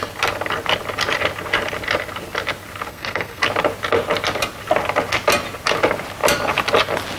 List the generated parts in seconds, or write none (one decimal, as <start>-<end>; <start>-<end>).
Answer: 2.9-3.4